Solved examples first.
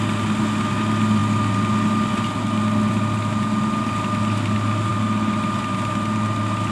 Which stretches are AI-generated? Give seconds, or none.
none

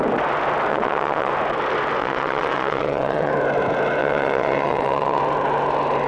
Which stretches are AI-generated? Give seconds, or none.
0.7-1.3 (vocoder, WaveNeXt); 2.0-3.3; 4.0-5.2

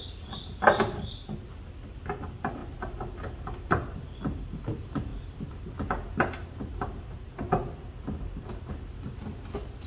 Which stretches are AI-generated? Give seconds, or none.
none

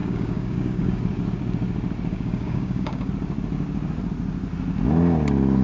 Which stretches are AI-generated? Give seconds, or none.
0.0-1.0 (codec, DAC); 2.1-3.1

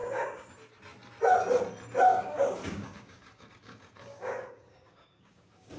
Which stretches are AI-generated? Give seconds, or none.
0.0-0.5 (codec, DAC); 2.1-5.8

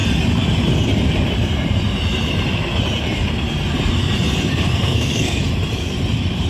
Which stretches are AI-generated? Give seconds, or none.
4.7-5.4 (codec, SNAC)